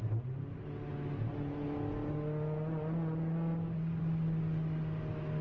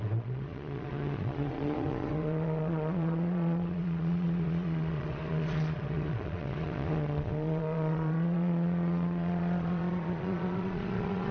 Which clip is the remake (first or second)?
second